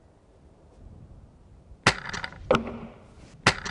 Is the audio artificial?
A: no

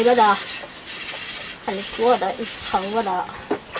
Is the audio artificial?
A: no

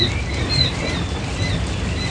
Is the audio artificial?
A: no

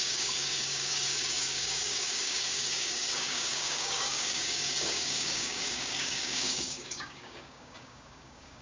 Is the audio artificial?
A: yes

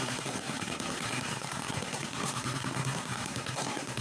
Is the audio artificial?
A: yes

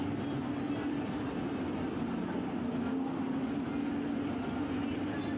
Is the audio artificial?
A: no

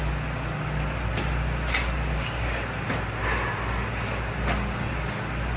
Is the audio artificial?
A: no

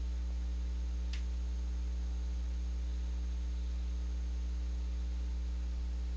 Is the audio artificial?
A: no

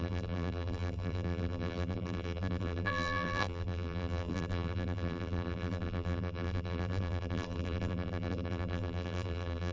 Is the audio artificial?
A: yes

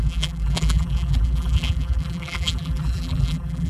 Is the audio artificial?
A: yes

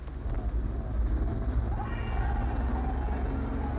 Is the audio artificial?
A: no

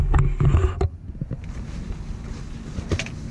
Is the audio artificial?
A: no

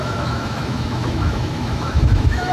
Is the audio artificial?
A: yes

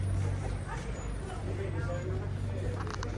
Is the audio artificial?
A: no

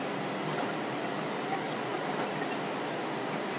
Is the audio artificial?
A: no